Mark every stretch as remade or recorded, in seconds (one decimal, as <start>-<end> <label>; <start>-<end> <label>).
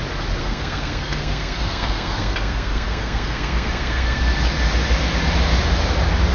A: 0.0-0.4 recorded; 0.4-4.2 remade; 4.2-6.3 recorded